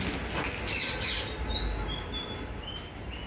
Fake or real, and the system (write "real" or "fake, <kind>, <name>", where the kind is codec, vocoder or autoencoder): real